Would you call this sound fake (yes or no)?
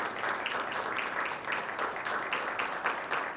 no